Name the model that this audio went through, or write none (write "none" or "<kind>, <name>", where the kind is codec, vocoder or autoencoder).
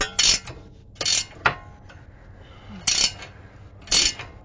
none